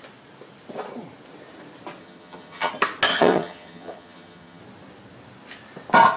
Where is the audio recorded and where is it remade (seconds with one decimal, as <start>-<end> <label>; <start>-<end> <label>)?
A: 0.0-2.0 recorded; 2.0-2.7 remade; 2.7-3.1 recorded; 3.1-4.6 remade; 4.6-6.2 recorded